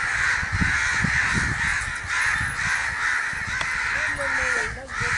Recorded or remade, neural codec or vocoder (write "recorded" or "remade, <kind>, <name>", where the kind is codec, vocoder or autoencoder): recorded